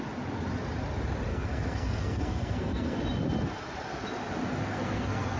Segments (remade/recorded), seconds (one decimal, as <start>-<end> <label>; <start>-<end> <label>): 0.0-1.3 recorded; 1.3-3.0 remade; 3.0-4.6 recorded; 4.6-5.4 remade